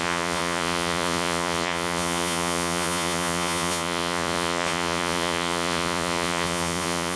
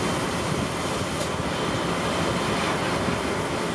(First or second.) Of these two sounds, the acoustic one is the second